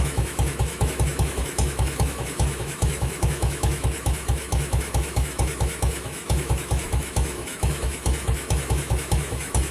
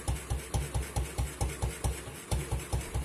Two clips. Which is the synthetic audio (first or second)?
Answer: first